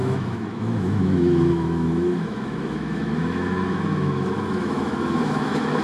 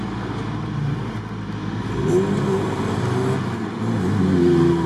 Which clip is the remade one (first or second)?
first